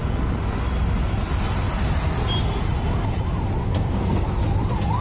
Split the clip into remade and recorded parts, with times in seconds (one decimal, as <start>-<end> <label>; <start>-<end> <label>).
0.0-3.6 recorded; 3.6-4.4 remade; 4.4-5.0 recorded